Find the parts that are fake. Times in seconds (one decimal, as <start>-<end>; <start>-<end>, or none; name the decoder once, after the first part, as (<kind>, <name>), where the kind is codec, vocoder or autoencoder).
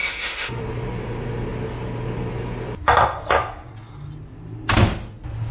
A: 0.0-0.6 (autoencoder, DAC-VAE)